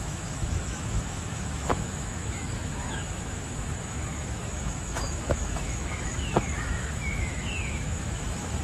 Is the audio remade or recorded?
remade